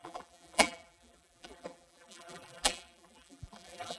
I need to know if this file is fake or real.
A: fake